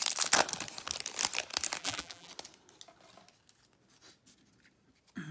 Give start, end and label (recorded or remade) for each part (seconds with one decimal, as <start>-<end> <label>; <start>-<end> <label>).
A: 0.0-1.8 recorded; 1.8-2.3 remade; 2.3-5.3 recorded